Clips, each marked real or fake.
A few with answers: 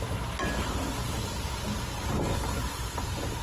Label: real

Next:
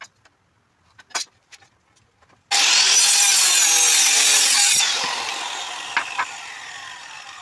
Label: real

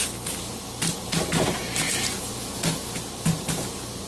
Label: real